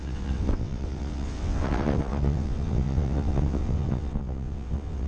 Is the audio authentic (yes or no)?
no